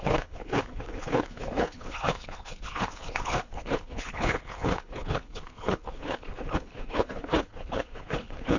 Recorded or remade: remade